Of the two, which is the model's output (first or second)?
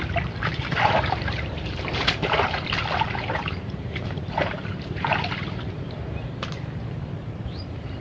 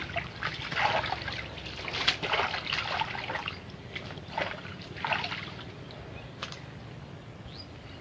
first